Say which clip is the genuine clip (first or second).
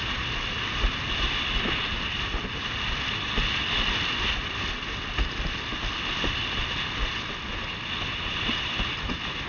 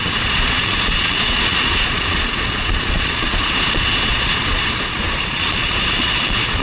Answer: first